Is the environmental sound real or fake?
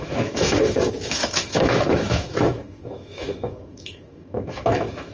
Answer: fake